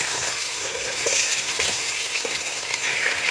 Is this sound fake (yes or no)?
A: yes